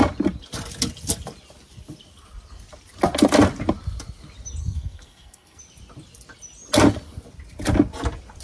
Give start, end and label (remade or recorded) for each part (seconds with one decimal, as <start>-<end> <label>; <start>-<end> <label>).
0.0-4.6 recorded; 4.6-5.6 remade; 5.6-8.4 recorded